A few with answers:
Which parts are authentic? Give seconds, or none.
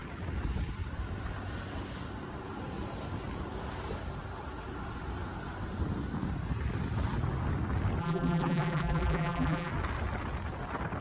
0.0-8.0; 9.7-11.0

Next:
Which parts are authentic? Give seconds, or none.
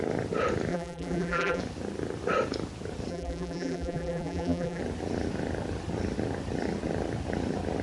0.0-0.7; 1.6-3.1; 4.8-7.8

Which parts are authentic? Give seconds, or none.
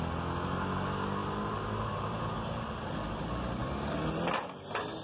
0.0-1.2; 2.2-5.0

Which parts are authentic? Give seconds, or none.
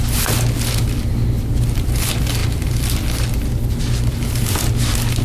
0.0-5.2